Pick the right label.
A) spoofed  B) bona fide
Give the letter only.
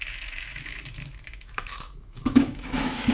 A